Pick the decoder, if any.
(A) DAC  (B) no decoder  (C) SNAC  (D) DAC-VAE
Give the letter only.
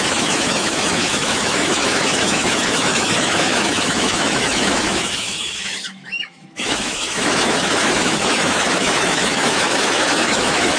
D